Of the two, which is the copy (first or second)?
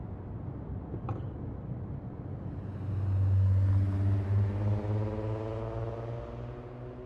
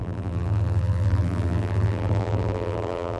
second